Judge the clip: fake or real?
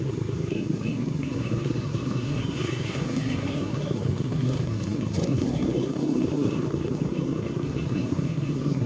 fake